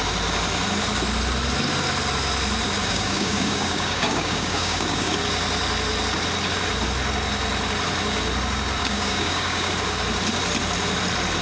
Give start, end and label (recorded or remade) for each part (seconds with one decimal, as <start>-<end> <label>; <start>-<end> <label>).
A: 0.0-2.8 recorded; 2.8-5.1 remade; 5.1-8.8 recorded; 8.8-9.7 remade; 9.7-11.4 recorded